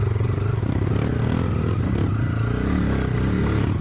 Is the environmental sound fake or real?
real